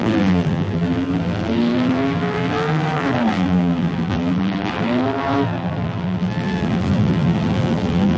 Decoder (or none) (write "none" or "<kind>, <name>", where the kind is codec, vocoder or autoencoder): vocoder, BigVGAN v2